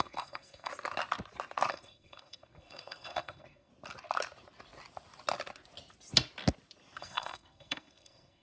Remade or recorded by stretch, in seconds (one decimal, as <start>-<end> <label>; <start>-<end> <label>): 0.0-0.7 remade; 0.7-1.7 recorded; 1.7-3.7 remade; 3.7-7.0 recorded; 7.0-8.4 remade